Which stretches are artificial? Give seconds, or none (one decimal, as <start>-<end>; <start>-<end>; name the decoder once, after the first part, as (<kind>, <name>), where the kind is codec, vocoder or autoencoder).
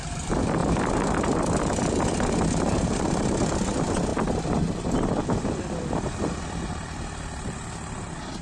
0.0-0.6 (vocoder, BigVGAN v2); 1.4-4.1; 5.5-8.4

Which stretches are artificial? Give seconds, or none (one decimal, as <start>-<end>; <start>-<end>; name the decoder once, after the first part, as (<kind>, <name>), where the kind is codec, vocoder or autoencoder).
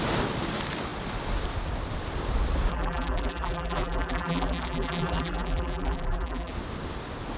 2.7-6.5 (vocoder, BigVGAN v2)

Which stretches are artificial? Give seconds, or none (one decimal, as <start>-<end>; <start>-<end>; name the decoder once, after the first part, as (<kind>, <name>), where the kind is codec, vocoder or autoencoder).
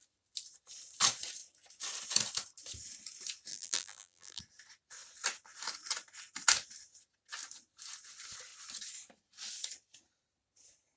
3.5-4.4 (vocoder, BigVGAN v2)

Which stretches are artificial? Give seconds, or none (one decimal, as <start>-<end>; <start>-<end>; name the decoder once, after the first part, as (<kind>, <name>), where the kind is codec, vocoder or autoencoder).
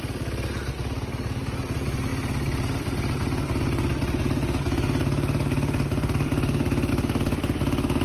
none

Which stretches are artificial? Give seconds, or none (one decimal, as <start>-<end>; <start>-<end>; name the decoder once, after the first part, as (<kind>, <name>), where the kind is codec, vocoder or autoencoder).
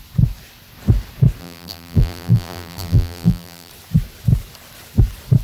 1.4-3.7 (vocoder, BigVGAN v2)